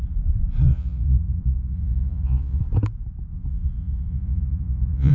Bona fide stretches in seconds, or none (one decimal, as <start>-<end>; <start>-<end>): 0.0-0.7; 2.6-3.3